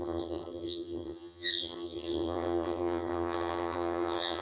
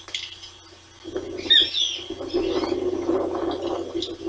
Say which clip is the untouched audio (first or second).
second